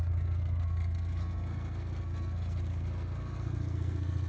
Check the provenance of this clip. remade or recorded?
remade